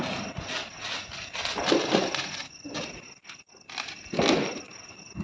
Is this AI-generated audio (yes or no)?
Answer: no